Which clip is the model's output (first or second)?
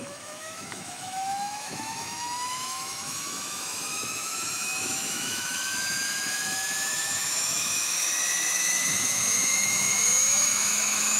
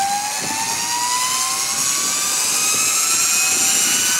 first